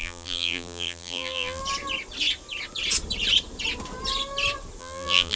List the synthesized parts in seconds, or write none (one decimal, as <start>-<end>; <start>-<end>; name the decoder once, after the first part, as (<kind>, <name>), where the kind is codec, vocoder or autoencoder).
0.0-1.6 (vocoder, BigVGAN v2); 4.8-5.4